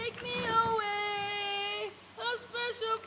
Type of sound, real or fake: real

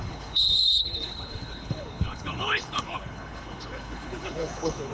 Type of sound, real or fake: fake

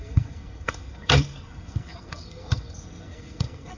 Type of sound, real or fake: fake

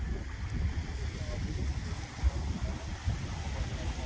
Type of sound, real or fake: real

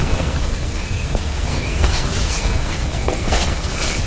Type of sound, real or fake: fake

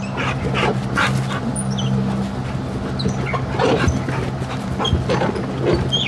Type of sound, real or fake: real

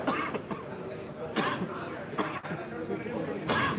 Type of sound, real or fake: real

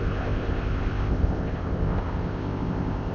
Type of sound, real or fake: fake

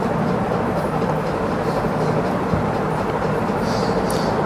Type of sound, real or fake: real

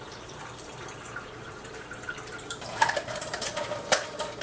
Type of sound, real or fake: fake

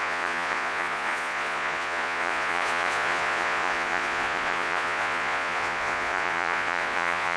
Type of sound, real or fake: fake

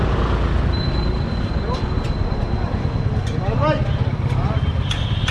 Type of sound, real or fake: real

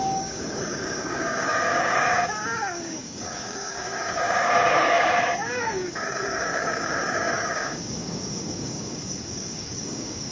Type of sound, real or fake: fake